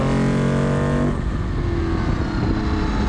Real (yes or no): yes